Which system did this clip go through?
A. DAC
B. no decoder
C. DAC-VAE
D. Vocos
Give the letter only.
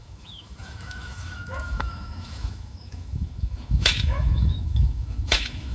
C